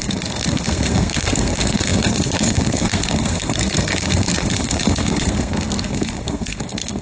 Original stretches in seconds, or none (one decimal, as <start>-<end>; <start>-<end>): none